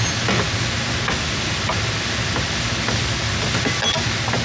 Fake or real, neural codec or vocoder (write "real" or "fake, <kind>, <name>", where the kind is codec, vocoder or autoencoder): real